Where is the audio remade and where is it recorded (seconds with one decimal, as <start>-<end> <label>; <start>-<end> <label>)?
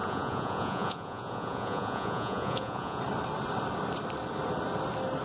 0.0-3.0 remade; 3.0-5.2 recorded